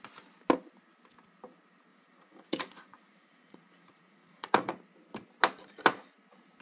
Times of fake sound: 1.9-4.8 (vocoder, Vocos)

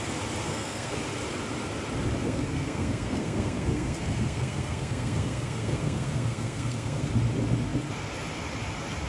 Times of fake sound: 0.4-1.0 (codec, SNAC); 2.2-7.1

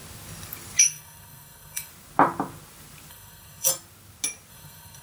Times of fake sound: 0.8-1.9 (codec, SNAC); 3.1-3.7; 4.5-5.0

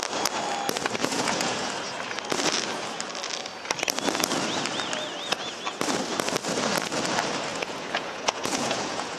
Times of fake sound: 1.0-1.7 (vocoder, Vocos); 7.5-9.2

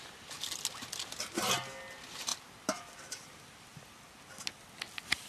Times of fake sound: none

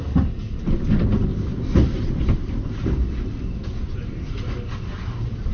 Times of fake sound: none

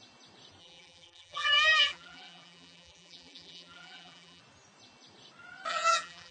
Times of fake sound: 0.6-4.4 (vocoder, BigVGAN v2); 5.7-6.3